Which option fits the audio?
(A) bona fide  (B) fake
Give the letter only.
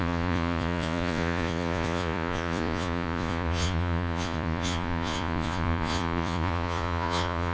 B